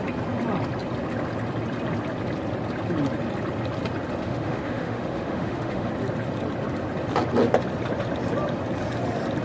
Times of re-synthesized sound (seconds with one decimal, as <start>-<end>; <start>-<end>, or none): 4.2-5.9